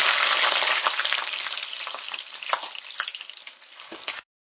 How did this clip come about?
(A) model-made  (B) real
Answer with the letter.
B